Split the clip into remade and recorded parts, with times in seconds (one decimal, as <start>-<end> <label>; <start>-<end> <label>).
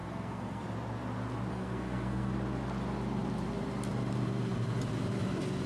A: 0.0-0.6 remade; 0.6-1.5 recorded; 1.5-2.3 remade; 2.3-5.7 recorded